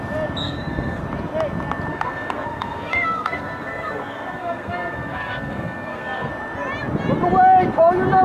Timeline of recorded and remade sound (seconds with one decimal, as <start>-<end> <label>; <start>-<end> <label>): 0.0-0.4 recorded; 0.4-1.0 remade; 1.0-1.9 recorded; 1.9-6.3 remade; 6.3-8.2 recorded